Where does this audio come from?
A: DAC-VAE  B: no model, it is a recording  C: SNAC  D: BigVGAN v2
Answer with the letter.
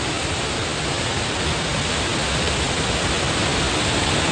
B